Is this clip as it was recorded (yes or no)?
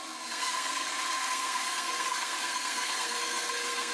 no